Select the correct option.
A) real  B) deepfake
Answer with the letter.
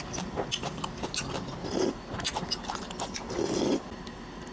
A